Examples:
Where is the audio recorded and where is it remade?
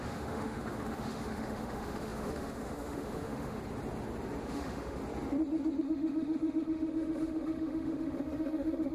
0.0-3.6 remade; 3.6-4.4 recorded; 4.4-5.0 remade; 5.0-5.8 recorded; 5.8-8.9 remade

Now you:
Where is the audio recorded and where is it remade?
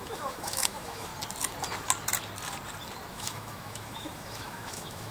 0.0-1.1 remade; 1.1-3.1 recorded; 3.1-5.1 remade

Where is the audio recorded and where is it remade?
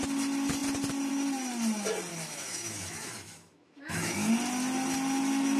0.0-2.1 recorded; 2.1-4.3 remade; 4.3-5.6 recorded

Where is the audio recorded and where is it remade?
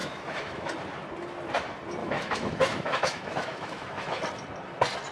0.0-0.7 remade; 0.7-2.0 recorded; 2.0-4.2 remade; 4.2-5.1 recorded